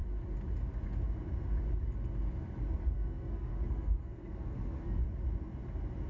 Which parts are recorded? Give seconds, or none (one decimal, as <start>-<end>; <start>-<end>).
0.0-2.8; 5.0-6.1